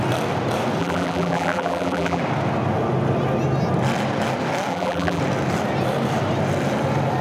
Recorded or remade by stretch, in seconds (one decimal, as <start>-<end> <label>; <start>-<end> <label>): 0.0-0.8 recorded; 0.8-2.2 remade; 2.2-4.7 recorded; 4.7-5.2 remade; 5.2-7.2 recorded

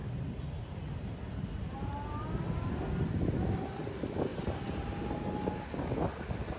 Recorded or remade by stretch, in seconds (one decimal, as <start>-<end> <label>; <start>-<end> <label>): 0.0-6.6 recorded

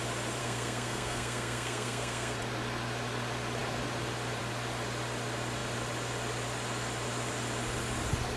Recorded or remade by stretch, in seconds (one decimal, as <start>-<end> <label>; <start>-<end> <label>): 0.0-0.4 recorded; 0.4-2.4 remade; 2.4-8.4 recorded